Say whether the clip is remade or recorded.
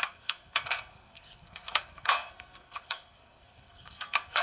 remade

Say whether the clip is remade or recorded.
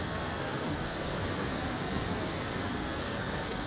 remade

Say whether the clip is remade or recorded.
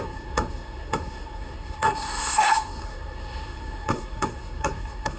remade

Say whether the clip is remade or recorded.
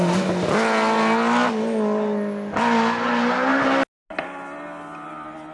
recorded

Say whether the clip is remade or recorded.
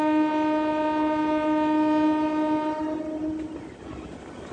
recorded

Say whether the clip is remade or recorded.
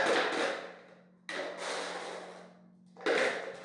recorded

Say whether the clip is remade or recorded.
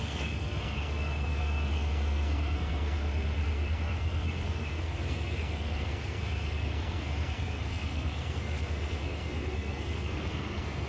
remade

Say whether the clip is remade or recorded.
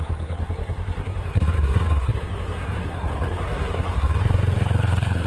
remade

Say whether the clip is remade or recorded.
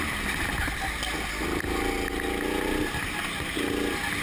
recorded